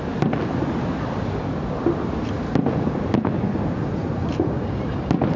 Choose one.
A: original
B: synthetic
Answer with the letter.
A